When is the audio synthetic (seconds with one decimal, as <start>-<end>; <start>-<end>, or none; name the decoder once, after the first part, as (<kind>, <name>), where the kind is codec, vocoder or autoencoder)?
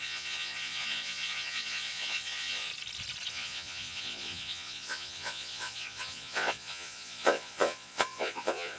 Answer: 0.0-2.7 (vocoder, Vocos); 3.3-8.8